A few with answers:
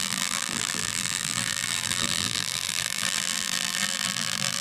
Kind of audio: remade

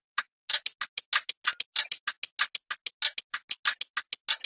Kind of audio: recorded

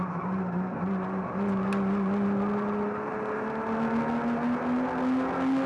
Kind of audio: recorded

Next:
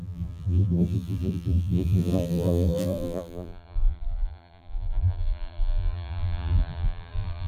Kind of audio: remade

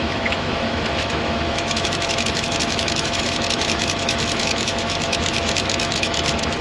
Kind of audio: remade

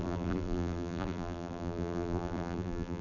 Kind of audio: remade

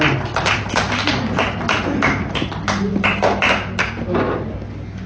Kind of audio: recorded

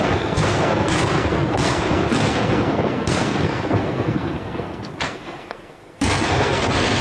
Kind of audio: remade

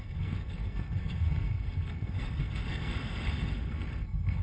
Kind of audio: remade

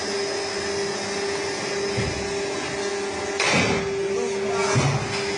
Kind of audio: recorded